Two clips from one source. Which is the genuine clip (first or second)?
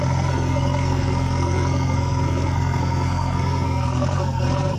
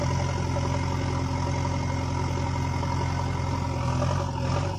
second